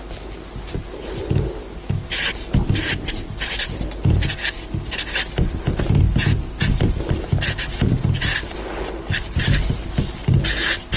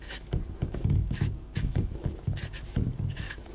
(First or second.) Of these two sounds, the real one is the first